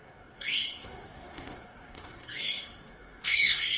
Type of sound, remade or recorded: remade